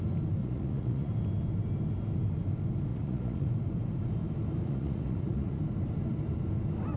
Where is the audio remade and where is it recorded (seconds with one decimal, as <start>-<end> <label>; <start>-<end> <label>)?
0.0-0.4 recorded; 0.4-1.1 remade; 1.1-2.9 recorded; 2.9-3.5 remade; 3.5-4.6 recorded; 4.6-5.6 remade; 5.6-7.0 recorded